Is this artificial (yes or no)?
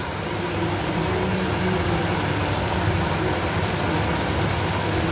no